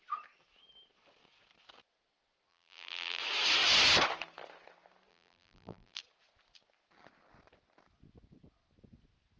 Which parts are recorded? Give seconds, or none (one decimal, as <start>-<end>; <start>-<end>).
0.0-2.5; 3.2-5.1; 6.0-9.4